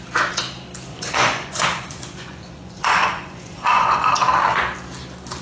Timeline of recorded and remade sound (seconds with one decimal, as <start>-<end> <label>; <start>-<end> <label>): 0.0-0.9 recorded; 0.9-4.1 remade; 4.1-5.4 recorded